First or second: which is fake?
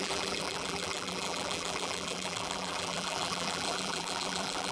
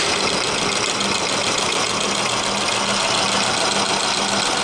first